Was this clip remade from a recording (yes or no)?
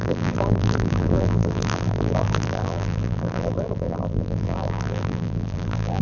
yes